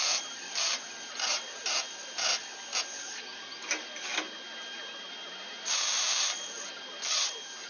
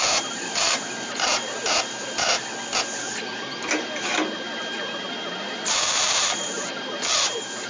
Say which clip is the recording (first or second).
first